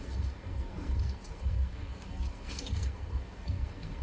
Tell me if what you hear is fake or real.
fake